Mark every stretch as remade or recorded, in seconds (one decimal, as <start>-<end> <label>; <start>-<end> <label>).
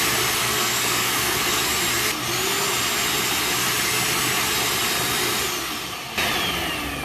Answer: 0.0-0.4 recorded; 0.4-1.8 remade; 1.8-7.0 recorded